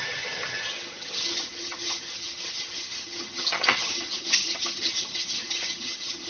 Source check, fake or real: fake